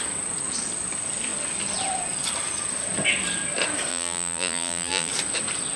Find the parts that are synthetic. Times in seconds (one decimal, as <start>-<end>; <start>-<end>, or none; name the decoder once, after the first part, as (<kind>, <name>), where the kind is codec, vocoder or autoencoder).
3.9-5.1 (vocoder, BigVGAN v2)